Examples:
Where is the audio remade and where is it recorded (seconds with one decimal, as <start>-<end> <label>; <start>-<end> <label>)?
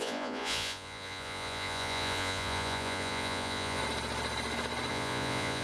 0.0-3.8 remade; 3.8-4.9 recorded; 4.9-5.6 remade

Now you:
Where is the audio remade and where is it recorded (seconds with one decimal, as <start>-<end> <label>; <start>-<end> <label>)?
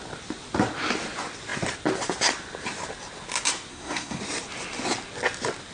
0.0-3.7 recorded; 3.7-4.2 remade; 4.2-5.7 recorded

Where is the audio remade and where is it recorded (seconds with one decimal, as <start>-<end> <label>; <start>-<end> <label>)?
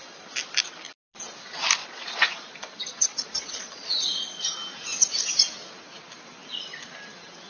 0.0-1.8 recorded; 1.8-4.3 remade; 4.3-7.5 recorded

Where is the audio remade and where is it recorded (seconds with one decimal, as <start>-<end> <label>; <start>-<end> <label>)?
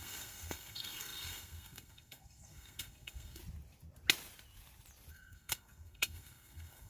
0.0-3.4 remade; 3.4-5.1 recorded; 5.1-6.9 remade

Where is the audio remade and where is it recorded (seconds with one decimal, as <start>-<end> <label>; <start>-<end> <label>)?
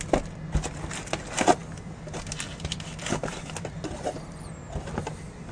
0.0-5.5 recorded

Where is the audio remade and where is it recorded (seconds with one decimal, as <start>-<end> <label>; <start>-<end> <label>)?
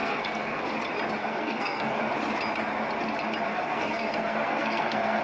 0.0-0.6 remade; 0.6-1.2 recorded; 1.2-2.0 remade; 2.0-3.5 recorded; 3.5-5.2 remade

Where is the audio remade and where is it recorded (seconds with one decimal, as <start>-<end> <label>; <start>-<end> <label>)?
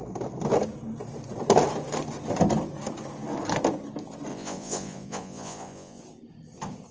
0.0-4.3 recorded; 4.3-6.0 remade; 6.0-6.9 recorded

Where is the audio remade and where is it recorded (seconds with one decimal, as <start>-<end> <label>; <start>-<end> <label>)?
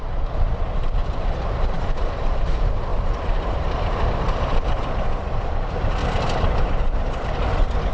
0.0-1.0 recorded; 1.0-1.5 remade; 1.5-2.9 recorded; 2.9-4.8 remade; 4.8-6.0 recorded; 6.0-7.0 remade; 7.0-7.9 recorded